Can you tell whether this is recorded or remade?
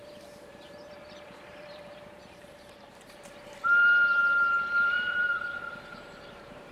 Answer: remade